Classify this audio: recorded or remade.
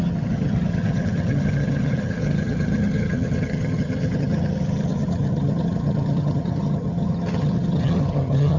remade